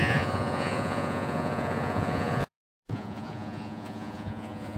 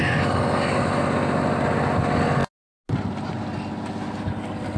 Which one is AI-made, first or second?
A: first